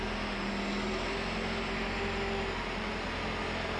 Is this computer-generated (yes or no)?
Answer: no